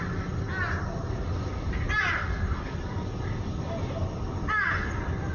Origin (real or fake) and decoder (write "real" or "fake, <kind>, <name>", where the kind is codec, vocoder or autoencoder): real